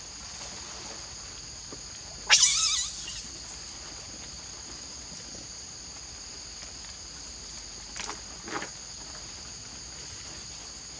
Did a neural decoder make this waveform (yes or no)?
no